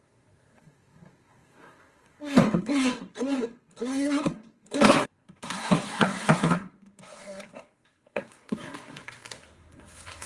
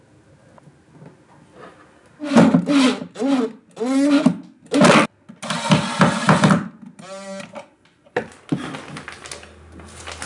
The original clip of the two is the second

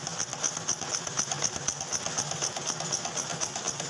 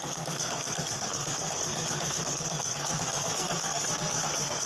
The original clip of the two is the first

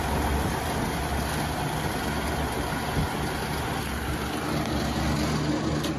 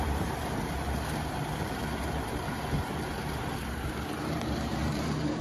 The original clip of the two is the first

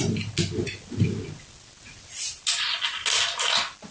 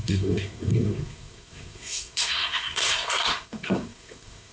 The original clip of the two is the first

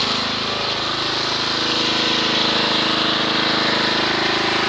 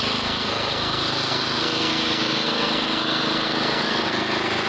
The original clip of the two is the first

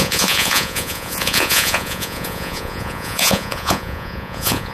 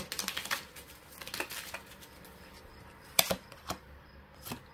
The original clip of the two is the second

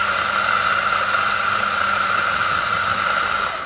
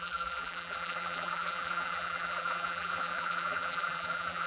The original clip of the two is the first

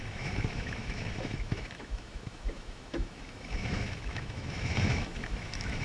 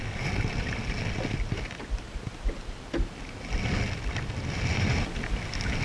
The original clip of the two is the second